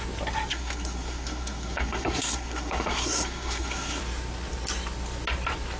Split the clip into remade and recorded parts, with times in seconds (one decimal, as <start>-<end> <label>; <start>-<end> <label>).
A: 0.0-0.5 recorded; 0.5-4.0 remade; 4.0-5.8 recorded